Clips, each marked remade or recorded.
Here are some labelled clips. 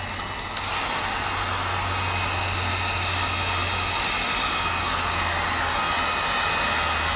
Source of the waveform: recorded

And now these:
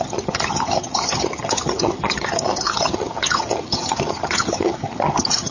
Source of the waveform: remade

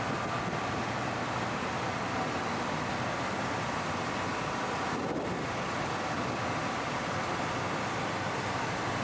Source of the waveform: recorded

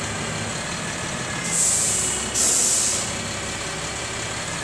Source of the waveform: recorded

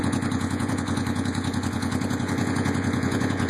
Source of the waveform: remade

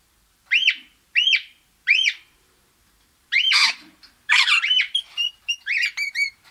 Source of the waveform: remade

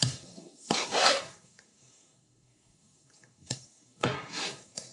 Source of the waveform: remade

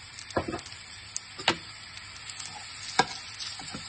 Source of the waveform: recorded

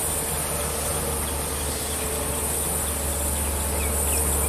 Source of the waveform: recorded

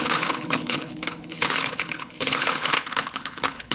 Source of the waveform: remade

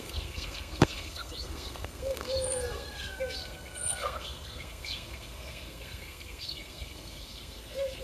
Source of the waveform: remade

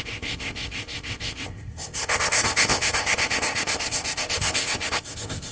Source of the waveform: remade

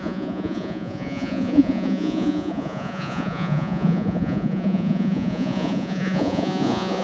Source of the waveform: remade